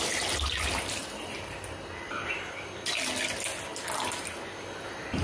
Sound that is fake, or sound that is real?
real